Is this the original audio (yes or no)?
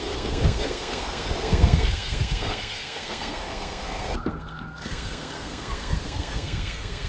no